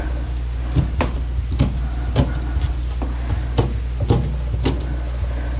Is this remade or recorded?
recorded